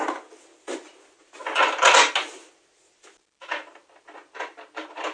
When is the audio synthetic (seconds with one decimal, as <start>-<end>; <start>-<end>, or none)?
none